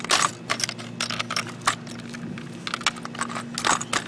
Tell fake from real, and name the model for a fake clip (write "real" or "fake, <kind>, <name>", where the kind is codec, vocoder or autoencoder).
real